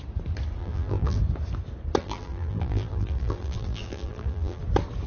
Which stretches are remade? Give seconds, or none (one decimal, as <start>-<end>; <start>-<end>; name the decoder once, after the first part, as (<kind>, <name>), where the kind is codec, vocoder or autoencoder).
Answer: 0.6-1.2 (vocoder, BigVGAN v2); 2.0-4.6